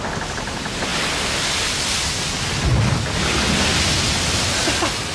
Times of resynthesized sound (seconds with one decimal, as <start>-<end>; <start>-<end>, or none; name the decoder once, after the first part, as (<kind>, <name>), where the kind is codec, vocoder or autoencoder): none